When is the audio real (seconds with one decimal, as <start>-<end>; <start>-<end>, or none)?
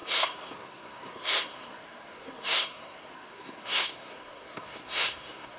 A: none